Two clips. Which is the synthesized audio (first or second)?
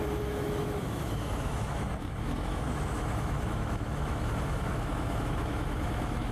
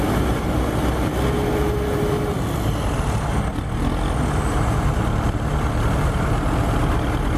first